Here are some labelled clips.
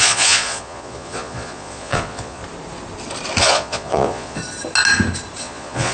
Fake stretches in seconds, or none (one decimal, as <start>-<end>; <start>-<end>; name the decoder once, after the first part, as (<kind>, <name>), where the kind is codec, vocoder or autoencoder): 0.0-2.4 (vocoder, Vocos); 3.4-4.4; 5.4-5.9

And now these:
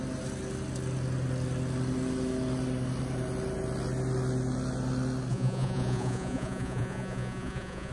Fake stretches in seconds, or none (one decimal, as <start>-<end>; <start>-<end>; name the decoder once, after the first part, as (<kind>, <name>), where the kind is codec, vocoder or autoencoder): 5.3-7.9 (vocoder, Vocos)

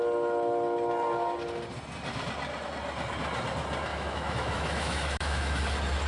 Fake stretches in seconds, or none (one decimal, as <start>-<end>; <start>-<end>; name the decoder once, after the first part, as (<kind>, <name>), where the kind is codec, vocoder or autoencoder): 3.9-5.6 (autoencoder, DAC-VAE)